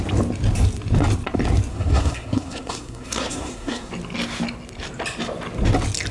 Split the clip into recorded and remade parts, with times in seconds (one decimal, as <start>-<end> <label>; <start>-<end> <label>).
0.0-1.7 recorded; 1.7-3.9 remade; 3.9-6.1 recorded